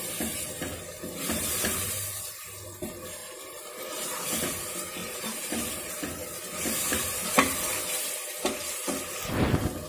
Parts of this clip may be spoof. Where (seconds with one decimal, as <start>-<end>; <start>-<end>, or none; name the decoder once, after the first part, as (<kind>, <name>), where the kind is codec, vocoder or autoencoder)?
3.2-3.8 (vocoder, BigVGAN v2); 5.0-5.9